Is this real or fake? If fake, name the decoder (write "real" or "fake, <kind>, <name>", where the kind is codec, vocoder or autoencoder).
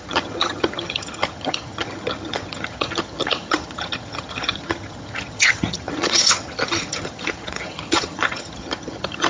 fake, vocoder, HiFi-GAN